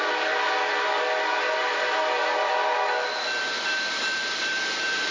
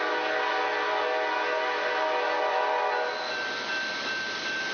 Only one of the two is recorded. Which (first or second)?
second